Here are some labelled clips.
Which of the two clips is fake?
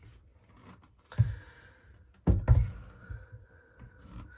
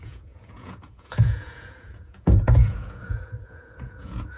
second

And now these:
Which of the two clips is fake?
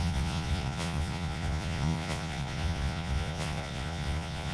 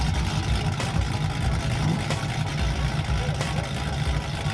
first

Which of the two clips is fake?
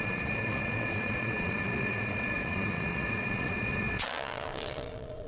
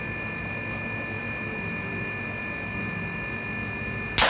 first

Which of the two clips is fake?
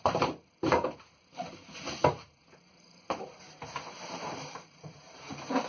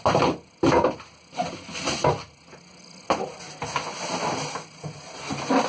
first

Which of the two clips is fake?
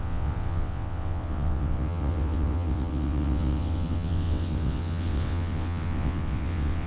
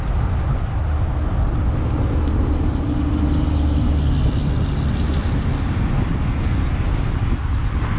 first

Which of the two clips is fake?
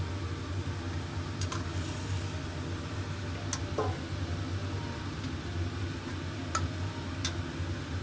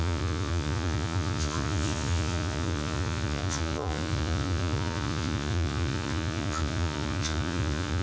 second